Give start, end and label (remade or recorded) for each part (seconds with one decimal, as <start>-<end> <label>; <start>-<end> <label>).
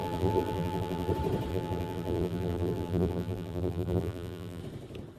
0.0-1.1 remade; 1.1-1.5 recorded; 1.5-4.6 remade; 4.6-5.2 recorded